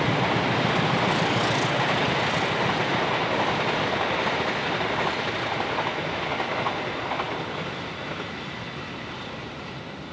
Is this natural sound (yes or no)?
yes